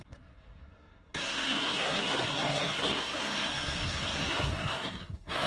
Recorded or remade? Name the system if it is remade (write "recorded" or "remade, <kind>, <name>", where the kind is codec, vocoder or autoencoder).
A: remade, codec, SNAC